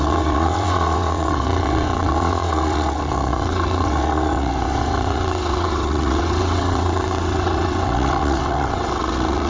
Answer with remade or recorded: remade